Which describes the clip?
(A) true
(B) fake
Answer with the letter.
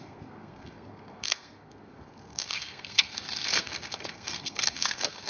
B